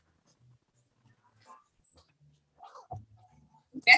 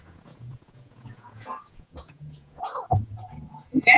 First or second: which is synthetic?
second